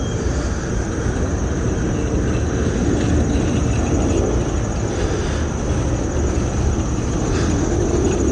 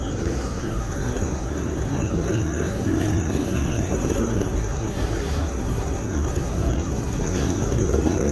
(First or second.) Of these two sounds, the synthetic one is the second